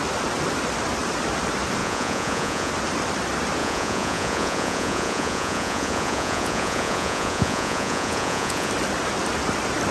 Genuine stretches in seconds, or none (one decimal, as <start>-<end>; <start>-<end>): 0.0-1.8; 2.7-3.6; 8.7-9.9